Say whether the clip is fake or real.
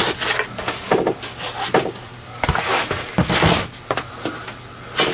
real